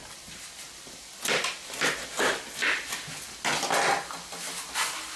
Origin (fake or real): real